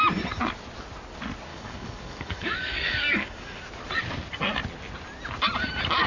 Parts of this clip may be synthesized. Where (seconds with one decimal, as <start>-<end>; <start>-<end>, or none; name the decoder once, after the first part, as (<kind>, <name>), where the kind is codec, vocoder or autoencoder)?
1.5-3.6 (codec, DAC)